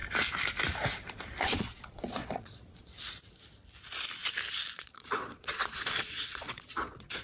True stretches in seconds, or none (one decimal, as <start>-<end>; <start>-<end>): 0.0-1.4; 2.9-4.7